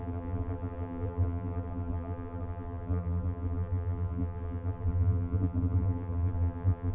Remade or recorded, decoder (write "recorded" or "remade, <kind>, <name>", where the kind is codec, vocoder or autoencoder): remade, vocoder, BigVGAN v2